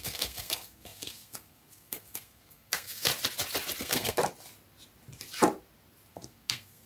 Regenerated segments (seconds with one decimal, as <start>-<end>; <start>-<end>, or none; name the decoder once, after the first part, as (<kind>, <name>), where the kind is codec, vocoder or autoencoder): 0.0-3.1 (codec, SNAC); 3.8-4.2; 6.1-6.9